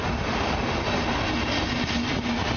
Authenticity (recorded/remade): recorded